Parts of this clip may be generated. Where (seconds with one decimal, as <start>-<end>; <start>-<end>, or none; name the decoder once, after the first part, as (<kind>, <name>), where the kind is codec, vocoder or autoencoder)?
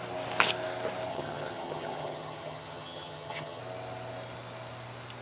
1.1-3.6 (vocoder, HiFi-GAN)